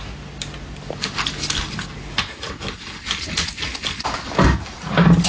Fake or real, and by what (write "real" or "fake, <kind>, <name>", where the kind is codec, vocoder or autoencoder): real